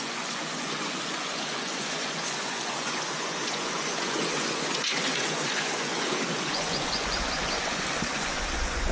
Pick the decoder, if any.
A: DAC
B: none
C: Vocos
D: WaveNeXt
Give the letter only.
C